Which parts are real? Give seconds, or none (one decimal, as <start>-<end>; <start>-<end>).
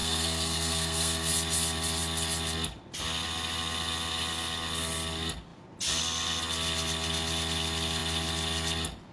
1.3-9.1